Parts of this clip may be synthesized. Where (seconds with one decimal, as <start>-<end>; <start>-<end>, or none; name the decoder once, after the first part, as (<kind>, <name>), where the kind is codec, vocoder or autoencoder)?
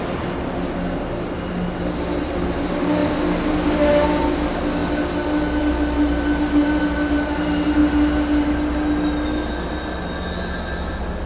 none